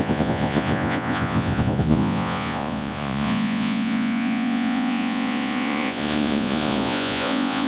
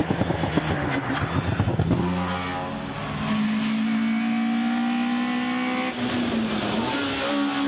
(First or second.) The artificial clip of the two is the first